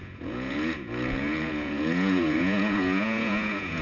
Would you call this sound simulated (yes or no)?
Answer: yes